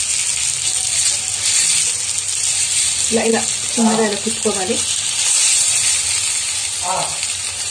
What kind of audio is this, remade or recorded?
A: recorded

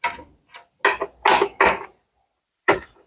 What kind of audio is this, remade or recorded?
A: recorded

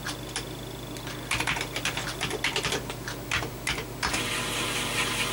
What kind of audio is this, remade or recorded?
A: recorded